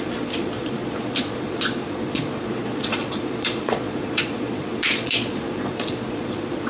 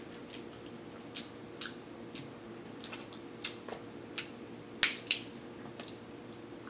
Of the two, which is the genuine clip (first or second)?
second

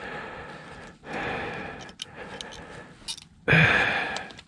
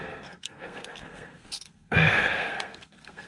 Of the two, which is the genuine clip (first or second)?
first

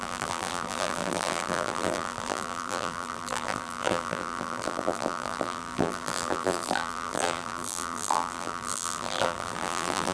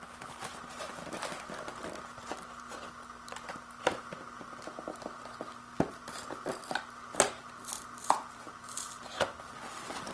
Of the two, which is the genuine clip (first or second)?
second